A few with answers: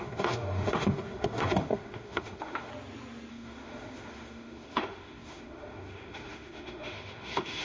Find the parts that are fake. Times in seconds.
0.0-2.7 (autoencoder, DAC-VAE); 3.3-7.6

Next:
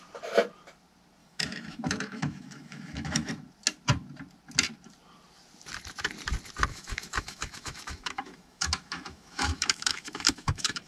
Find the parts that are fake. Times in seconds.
1.2-3.3 (autoencoder, DAC-VAE); 6.7-10.9

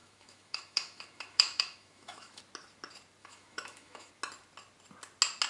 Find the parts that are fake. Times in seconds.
0.0-2.4 (autoencoder, DAC-VAE); 3.2-4.1

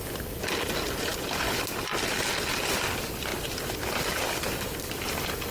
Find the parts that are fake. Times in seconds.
none

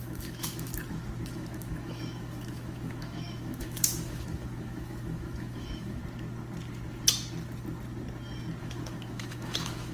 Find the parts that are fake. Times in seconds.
0.0-0.7 (autoencoder, DAC-VAE); 1.2-6.0; 8.6-9.9

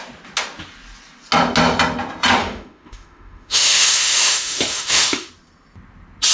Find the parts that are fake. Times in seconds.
2.4-5.3 (autoencoder, DAC-VAE)

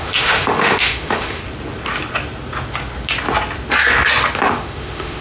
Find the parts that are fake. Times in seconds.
0.0-1.4 (autoencoder, DAC-VAE); 4.5-5.2